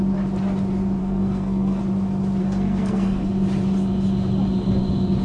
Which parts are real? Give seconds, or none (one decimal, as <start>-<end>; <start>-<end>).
0.0-1.0; 1.8-2.4; 3.3-5.2